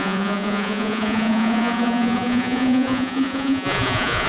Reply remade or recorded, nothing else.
remade